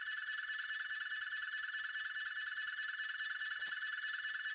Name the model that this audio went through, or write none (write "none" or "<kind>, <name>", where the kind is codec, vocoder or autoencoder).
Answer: none